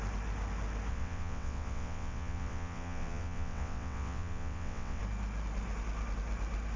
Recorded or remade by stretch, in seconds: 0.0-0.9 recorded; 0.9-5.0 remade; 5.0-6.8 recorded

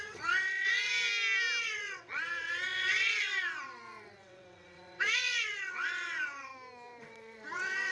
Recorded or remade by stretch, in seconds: 0.0-0.9 remade; 0.9-1.6 recorded; 1.6-6.5 remade; 6.5-7.0 recorded; 7.0-7.9 remade